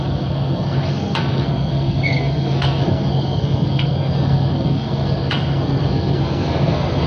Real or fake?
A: fake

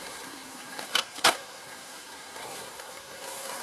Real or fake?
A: fake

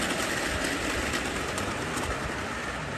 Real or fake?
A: real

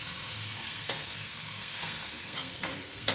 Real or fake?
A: fake